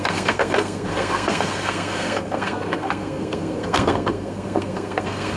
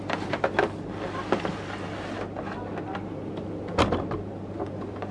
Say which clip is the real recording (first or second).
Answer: second